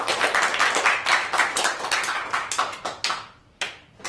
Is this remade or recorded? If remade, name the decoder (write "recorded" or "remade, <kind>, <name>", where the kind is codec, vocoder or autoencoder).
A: recorded